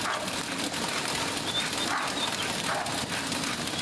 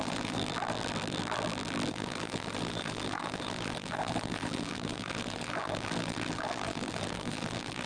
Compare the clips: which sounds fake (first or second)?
second